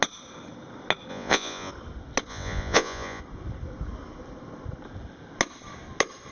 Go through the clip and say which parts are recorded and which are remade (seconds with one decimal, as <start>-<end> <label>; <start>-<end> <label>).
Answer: 0.0-1.1 recorded; 1.1-1.7 remade; 1.7-2.3 recorded; 2.3-3.2 remade; 3.2-6.3 recorded